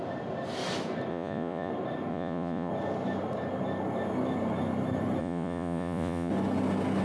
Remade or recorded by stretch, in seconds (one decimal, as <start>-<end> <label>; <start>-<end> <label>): 0.0-1.1 recorded; 1.1-1.7 remade; 1.7-2.1 recorded; 2.1-2.7 remade; 2.7-5.2 recorded; 5.2-6.3 remade; 6.3-7.0 recorded